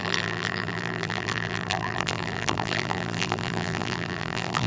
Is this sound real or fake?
fake